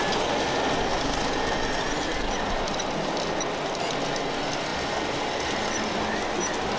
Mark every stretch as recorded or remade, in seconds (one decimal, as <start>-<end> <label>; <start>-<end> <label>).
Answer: 0.0-6.8 recorded